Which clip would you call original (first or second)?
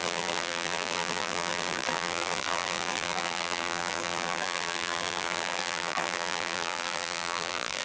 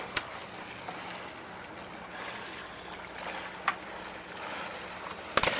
second